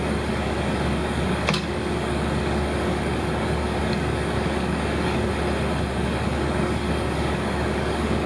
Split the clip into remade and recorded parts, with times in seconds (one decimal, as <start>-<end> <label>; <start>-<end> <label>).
0.0-5.3 remade; 5.3-5.9 recorded; 5.9-8.3 remade